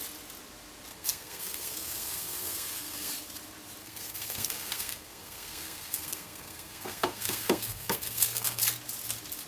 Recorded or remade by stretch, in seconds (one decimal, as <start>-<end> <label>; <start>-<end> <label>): 0.0-0.9 recorded; 0.9-3.1 remade; 3.1-3.8 recorded; 3.8-8.6 remade; 8.6-9.5 recorded